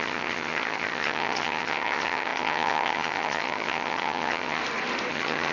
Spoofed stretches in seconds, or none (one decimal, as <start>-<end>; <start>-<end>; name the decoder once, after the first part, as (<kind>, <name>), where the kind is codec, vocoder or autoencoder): 0.0-4.6 (vocoder, HiFi-GAN); 5.1-5.5